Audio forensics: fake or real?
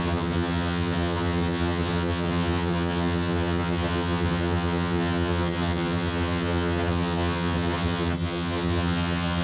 fake